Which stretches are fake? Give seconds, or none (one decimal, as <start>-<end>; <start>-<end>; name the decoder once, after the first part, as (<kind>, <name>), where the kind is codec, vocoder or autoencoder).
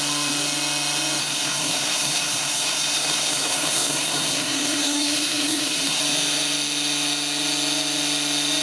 1.2-6.0 (codec, SNAC)